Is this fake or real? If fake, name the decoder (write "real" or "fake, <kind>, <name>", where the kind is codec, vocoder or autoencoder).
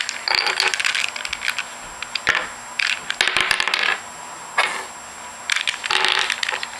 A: real